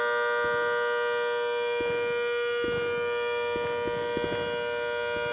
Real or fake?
real